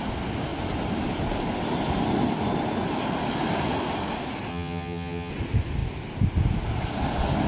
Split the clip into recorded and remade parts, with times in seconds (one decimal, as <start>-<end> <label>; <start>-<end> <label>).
0.0-4.5 recorded; 4.5-5.3 remade; 5.3-7.5 recorded